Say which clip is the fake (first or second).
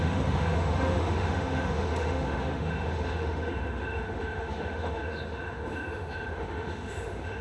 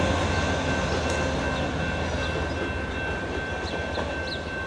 first